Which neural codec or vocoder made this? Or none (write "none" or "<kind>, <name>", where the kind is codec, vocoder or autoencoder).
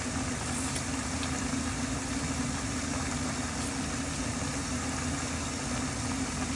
none